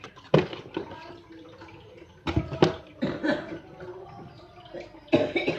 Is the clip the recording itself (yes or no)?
yes